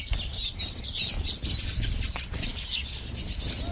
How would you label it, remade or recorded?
recorded